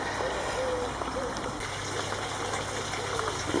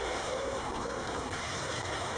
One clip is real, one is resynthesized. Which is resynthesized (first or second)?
second